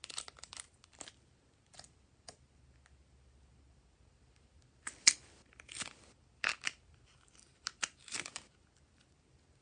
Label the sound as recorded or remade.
recorded